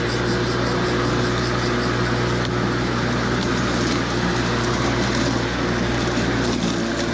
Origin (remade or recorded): recorded